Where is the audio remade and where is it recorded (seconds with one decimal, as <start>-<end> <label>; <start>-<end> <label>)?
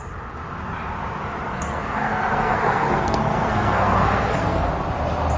0.0-1.5 recorded; 1.5-4.7 remade; 4.7-5.4 recorded